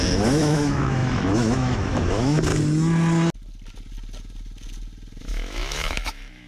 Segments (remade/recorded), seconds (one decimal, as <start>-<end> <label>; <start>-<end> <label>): 0.0-2.5 remade; 2.5-5.2 recorded; 5.2-6.5 remade

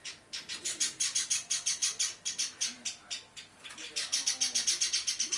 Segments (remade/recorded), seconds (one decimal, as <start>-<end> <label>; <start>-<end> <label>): 0.0-5.4 recorded

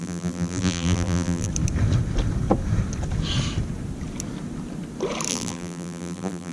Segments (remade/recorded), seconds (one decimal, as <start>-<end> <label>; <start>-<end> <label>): 0.0-1.5 remade; 1.5-5.3 recorded; 5.3-6.5 remade

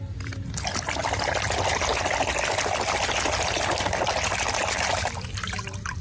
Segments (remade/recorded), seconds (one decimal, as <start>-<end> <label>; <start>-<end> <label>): 0.0-6.0 recorded

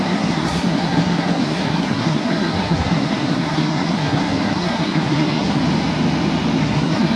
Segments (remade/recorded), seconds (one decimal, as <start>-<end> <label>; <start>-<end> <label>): 0.0-5.6 remade; 5.6-6.6 recorded; 6.6-7.2 remade

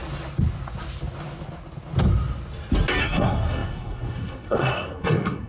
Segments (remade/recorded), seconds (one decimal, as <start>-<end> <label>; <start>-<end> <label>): 0.0-3.0 recorded; 3.0-5.5 remade

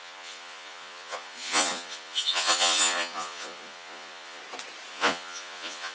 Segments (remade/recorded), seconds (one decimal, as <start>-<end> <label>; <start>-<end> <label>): 0.0-4.4 remade; 4.4-4.9 recorded; 4.9-5.9 remade